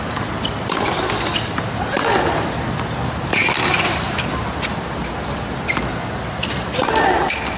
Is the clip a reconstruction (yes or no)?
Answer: no